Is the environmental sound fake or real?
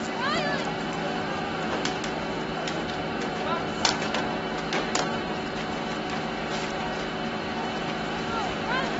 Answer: real